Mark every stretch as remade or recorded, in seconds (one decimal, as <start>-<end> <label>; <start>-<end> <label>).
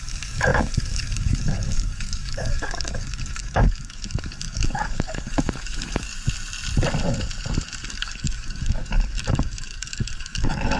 0.0-6.1 remade; 6.1-7.9 recorded; 7.9-10.8 remade